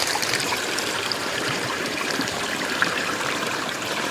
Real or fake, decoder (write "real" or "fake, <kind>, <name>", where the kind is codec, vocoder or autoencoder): fake, vocoder, BigVGAN v2